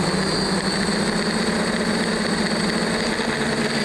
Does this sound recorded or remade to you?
recorded